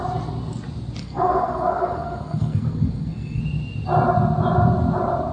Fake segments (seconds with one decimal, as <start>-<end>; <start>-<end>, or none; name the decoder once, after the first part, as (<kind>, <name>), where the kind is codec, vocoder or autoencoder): 1.0-3.4 (codec, SNAC)